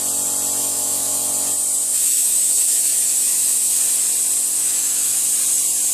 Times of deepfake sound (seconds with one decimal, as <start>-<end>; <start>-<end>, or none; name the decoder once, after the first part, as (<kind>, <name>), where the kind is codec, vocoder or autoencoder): 0.6-1.3 (autoencoder, DAC-VAE); 1.8-3.8; 4.5-5.3